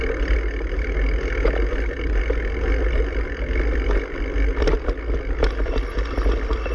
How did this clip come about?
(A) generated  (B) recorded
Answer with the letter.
B